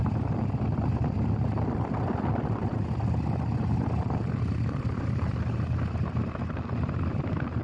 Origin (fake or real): real